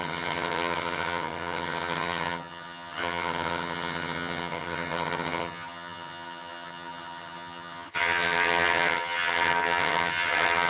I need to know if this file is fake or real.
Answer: fake